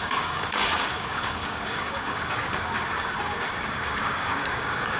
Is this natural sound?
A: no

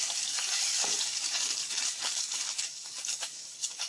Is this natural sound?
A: no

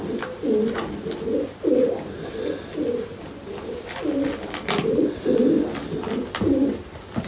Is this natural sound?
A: yes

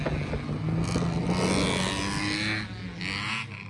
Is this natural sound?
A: yes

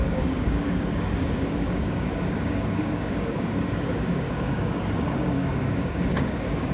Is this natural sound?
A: no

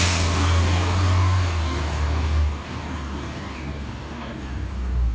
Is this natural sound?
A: no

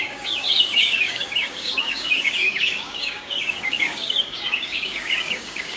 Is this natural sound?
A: no